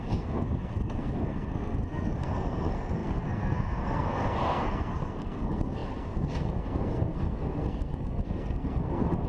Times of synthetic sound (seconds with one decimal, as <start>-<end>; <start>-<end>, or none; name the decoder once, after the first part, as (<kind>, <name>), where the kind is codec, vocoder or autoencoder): 0.0-9.3 (codec, SNAC)